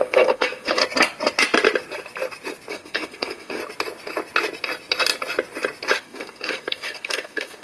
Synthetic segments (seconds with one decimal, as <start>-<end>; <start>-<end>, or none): 0.0-0.8; 2.7-3.6; 6.0-7.6